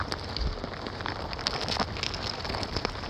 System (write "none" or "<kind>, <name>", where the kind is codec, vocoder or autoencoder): none